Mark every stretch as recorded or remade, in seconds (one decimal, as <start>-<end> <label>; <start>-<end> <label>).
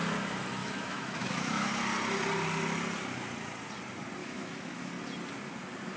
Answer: 0.0-0.6 recorded; 0.6-1.7 remade; 1.7-4.2 recorded; 4.2-4.9 remade; 4.9-6.0 recorded